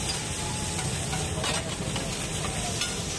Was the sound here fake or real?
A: real